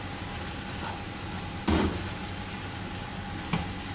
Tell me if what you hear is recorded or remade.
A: recorded